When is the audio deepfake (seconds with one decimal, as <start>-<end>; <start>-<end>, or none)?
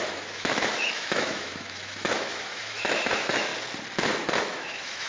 0.0-3.5; 4.4-5.1